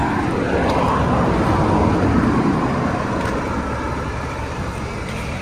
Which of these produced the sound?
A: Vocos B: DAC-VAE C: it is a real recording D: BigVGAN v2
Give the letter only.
C